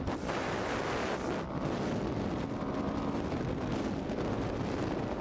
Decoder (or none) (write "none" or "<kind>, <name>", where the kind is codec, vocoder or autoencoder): none